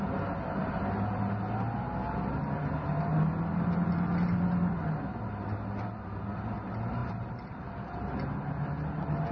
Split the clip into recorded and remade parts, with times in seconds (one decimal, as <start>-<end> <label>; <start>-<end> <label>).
0.0-7.0 recorded; 7.0-7.5 remade; 7.5-9.3 recorded